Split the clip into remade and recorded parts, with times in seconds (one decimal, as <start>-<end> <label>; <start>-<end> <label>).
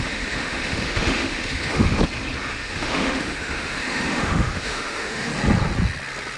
0.0-2.0 remade; 2.0-2.5 recorded; 2.5-5.3 remade; 5.3-6.4 recorded